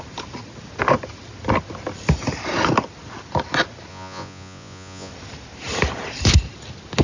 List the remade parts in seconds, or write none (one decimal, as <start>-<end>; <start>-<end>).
3.9-5.1